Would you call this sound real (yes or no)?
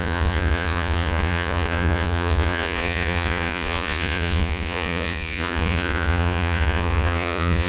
no